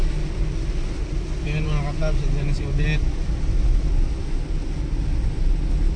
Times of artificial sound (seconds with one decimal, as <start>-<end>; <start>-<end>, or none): none